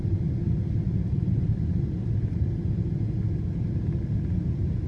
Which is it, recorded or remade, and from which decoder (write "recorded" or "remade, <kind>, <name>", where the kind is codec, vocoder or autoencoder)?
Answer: recorded